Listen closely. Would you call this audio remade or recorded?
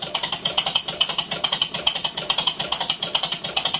recorded